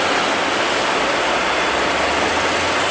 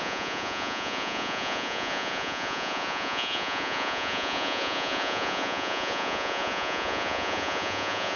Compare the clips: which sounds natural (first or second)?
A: first